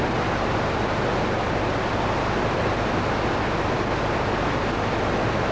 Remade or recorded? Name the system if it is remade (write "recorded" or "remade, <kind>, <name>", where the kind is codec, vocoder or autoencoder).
recorded